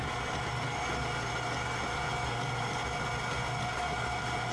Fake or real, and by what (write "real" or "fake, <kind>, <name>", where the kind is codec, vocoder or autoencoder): real